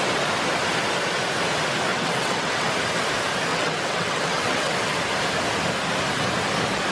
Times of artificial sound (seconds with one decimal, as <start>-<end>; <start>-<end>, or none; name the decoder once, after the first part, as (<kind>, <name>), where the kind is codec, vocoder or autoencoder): 1.9-2.7 (vocoder, WaveNeXt); 3.5-4.7